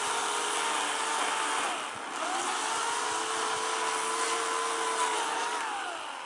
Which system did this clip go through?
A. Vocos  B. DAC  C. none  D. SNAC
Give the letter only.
C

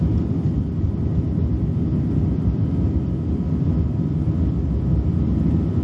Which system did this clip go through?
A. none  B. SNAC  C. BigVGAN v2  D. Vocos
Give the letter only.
A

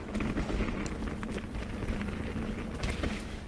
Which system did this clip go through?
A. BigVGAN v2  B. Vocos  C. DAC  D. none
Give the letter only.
D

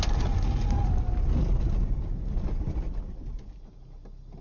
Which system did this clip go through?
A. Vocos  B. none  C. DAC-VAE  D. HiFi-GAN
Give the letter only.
B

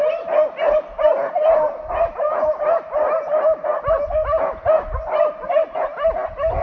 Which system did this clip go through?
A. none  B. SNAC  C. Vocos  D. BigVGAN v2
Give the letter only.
A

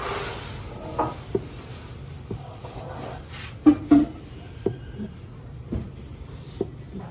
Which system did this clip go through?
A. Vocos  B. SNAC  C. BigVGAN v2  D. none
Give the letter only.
D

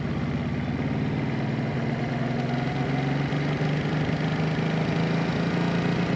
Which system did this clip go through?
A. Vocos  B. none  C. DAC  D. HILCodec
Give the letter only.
B